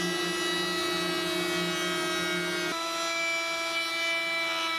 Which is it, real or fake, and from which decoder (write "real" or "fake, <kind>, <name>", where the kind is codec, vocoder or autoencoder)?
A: real